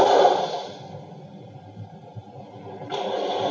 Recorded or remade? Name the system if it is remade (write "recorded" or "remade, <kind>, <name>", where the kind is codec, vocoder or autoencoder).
recorded